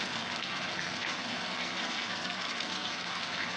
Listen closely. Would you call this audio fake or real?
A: fake